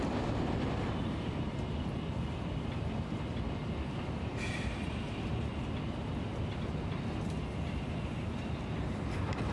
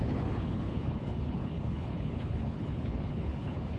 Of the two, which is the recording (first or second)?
first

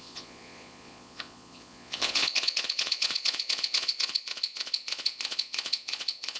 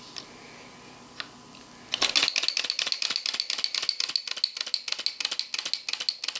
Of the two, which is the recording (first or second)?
second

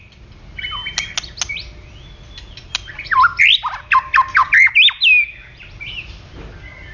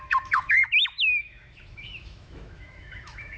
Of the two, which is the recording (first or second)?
first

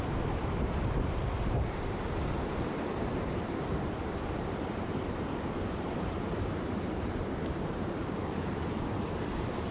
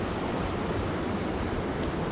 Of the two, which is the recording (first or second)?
second